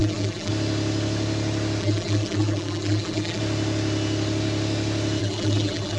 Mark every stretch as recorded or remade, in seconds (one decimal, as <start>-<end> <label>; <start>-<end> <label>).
0.0-0.5 remade; 0.5-1.8 recorded; 1.8-3.4 remade; 3.4-5.2 recorded; 5.2-6.0 remade